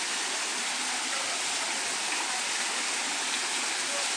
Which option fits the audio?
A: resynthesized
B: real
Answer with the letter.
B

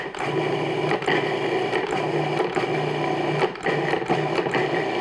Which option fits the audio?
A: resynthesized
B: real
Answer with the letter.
B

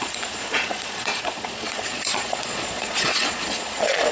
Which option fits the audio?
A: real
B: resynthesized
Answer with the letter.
B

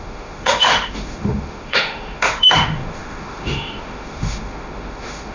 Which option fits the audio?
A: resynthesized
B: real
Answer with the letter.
A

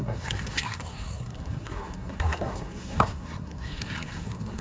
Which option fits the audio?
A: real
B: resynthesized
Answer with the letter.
B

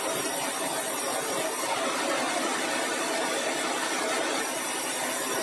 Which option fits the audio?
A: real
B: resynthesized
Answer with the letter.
B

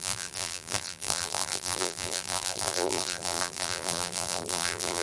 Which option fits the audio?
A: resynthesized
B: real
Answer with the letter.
A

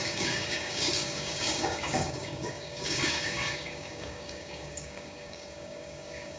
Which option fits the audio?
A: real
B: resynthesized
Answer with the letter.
B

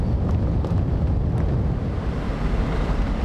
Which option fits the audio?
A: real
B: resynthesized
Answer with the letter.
A